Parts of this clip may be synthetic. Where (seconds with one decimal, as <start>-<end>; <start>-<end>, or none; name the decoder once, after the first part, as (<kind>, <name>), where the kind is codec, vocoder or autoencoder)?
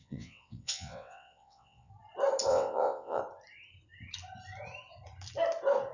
0.0-1.9 (vocoder, WaveNeXt); 2.5-3.2